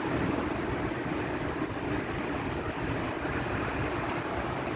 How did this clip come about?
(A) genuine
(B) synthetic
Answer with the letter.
A